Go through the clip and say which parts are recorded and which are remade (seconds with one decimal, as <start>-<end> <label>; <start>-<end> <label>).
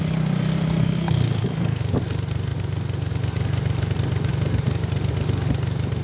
0.0-0.8 recorded; 0.8-1.8 remade; 1.8-6.0 recorded